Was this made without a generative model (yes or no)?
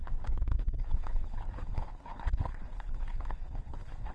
no